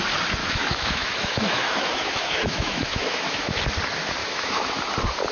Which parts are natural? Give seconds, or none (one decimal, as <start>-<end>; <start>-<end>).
0.0-0.4; 3.6-4.2; 4.8-5.3